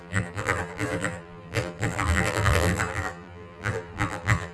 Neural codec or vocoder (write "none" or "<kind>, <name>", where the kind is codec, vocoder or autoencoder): vocoder, BigVGAN v2